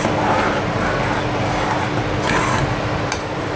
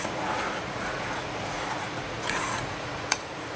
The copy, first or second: second